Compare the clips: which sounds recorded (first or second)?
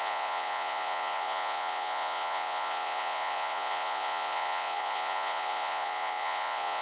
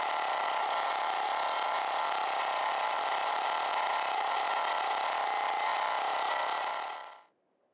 second